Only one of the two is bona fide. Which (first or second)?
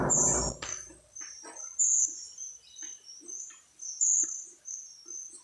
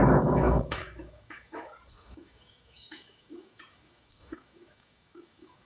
first